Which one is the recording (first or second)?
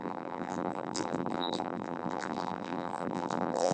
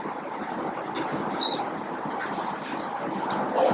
second